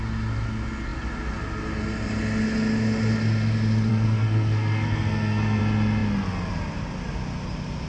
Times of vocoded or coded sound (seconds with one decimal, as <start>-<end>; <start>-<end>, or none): 3.9-5.6